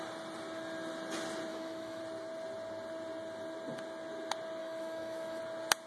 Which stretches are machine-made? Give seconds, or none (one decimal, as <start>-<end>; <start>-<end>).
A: 1.5-2.0; 4.6-5.4